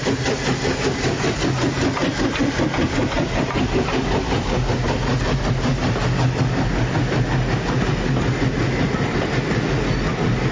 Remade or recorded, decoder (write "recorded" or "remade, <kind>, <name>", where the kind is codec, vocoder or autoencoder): recorded